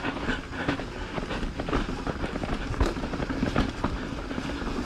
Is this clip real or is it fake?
real